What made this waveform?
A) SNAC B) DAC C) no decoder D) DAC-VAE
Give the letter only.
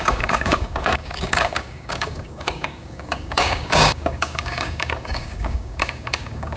B